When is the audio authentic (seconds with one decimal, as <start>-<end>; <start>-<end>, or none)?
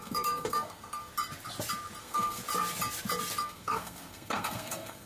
1.1-2.0; 2.4-3.4